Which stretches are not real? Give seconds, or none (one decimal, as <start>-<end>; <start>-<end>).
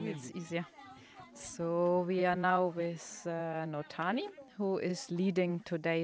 2.2-2.8; 3.4-4.2; 4.9-5.5